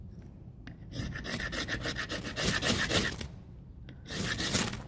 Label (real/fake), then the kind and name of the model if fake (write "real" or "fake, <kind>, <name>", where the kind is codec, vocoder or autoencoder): real